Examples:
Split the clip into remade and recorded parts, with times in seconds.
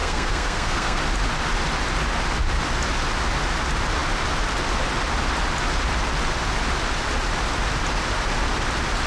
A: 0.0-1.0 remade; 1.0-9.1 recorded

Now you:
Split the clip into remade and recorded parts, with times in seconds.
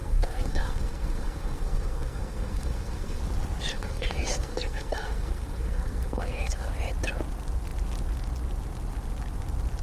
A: 0.0-3.2 remade; 3.2-3.7 recorded; 3.7-6.7 remade; 6.7-9.8 recorded